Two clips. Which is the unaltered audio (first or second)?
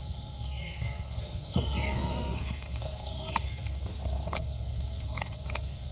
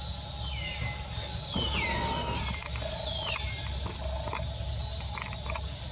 second